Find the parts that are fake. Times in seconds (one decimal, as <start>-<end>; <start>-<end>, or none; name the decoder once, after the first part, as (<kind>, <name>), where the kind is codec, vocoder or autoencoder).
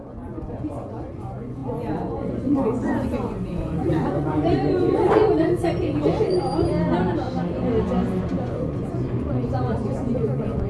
0.0-6.5 (vocoder, Vocos); 8.4-10.7